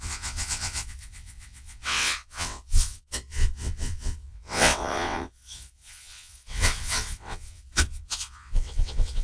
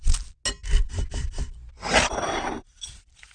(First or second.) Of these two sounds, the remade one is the first